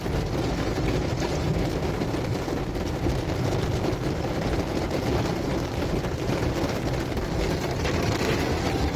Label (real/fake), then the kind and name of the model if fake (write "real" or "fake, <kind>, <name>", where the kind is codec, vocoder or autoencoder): real